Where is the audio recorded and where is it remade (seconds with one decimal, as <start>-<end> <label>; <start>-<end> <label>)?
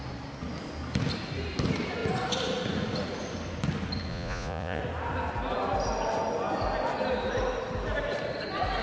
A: 0.0-4.1 recorded; 4.1-4.8 remade; 4.8-8.8 recorded